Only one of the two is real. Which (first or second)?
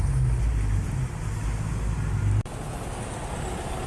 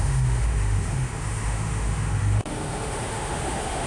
first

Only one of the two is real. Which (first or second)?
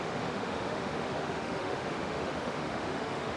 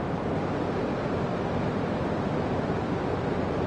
second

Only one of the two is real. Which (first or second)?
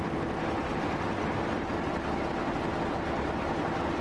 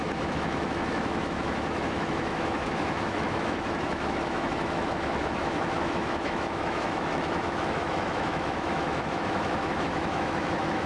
first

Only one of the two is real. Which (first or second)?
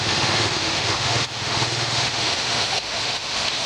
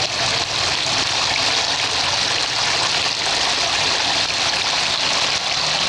second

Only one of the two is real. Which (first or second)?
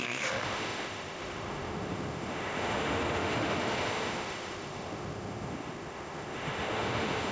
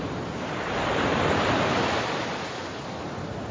second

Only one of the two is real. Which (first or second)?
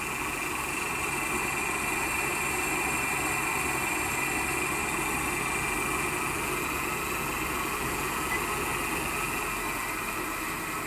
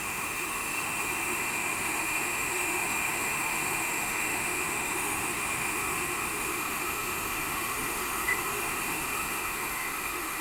first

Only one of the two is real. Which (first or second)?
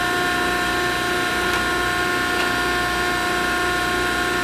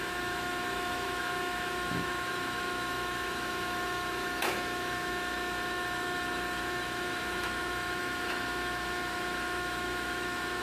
first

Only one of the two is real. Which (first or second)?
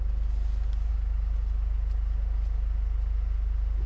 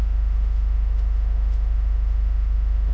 first